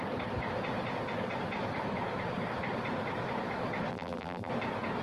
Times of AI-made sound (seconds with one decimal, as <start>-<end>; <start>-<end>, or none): 3.9-4.5